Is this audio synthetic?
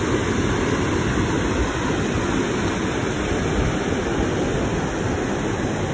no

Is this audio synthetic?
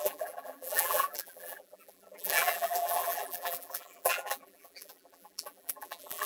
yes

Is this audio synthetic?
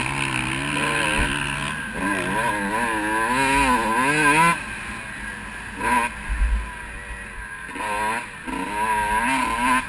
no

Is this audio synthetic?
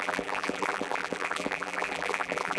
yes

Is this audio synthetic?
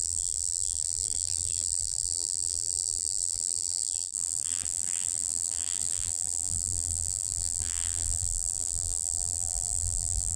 yes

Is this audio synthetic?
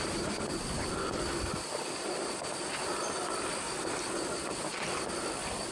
no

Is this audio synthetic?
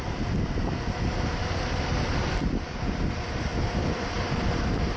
yes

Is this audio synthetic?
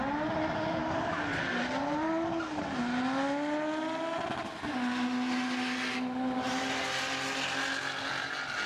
no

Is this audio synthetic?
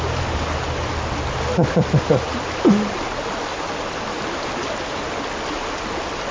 no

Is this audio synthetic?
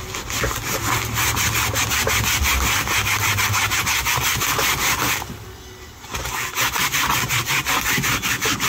no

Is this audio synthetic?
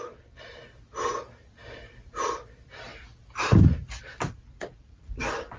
yes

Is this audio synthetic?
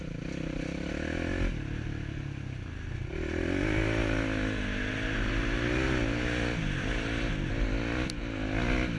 no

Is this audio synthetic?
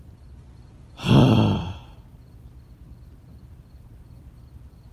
yes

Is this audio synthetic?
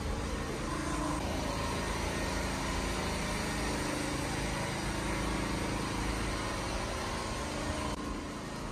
no